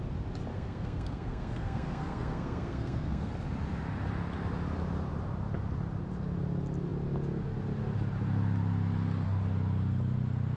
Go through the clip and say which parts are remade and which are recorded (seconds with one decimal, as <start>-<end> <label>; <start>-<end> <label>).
0.0-0.5 recorded; 0.5-3.3 remade; 3.3-10.6 recorded